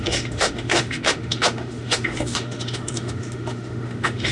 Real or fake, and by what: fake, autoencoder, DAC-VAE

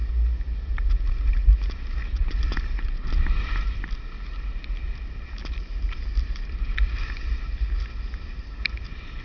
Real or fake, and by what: real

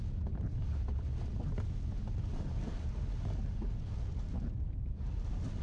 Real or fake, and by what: fake, vocoder, BigVGAN v2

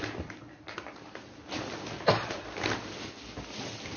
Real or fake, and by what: real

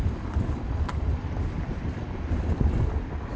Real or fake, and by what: real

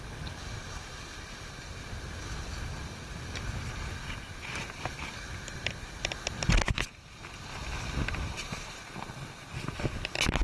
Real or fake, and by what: real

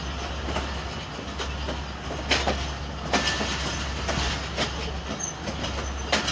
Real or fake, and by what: real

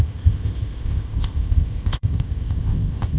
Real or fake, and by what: fake, codec, ZipCodec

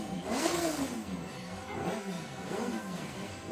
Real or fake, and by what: fake, codec, SNAC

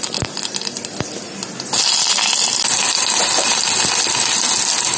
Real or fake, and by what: real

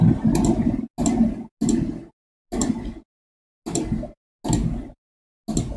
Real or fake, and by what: real